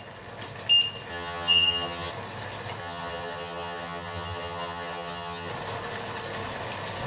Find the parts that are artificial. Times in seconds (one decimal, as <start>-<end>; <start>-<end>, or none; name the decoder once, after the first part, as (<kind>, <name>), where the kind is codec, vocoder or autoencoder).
1.1-2.1 (vocoder, HiFi-GAN); 2.8-5.5